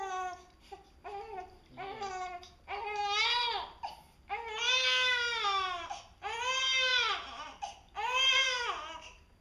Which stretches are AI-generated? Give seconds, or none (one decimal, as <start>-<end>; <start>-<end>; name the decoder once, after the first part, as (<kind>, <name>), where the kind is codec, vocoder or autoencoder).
none